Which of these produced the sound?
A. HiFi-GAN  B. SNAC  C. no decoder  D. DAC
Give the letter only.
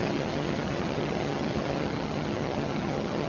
A